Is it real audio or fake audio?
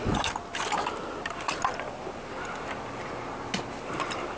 real